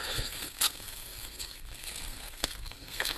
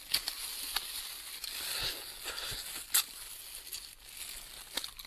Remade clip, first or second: first